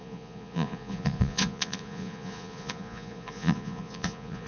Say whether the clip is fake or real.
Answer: fake